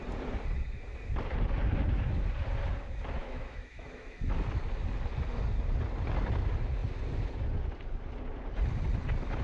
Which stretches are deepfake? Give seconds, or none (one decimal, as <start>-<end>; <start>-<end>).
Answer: 3.2-4.2